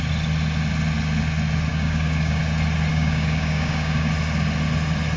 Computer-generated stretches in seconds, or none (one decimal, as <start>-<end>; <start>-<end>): 1.7-2.4; 2.9-4.1